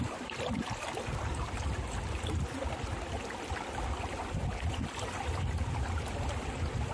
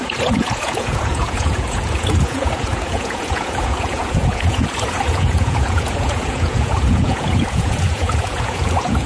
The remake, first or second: second